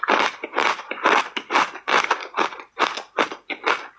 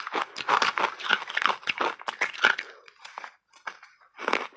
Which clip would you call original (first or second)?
second